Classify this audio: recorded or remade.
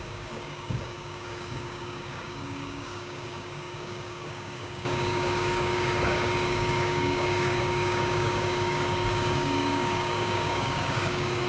remade